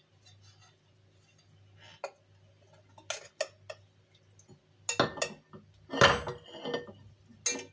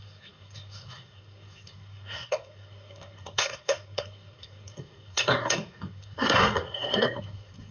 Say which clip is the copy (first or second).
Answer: second